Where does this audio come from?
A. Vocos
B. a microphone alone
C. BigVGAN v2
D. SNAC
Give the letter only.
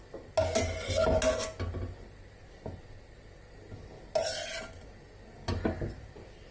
B